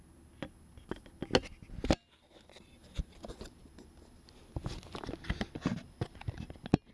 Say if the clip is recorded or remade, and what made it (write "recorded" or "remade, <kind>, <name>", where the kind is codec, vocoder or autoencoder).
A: recorded